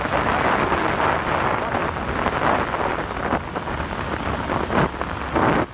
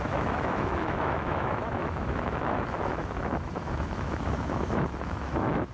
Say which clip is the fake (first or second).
second